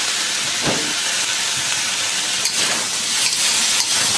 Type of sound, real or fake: real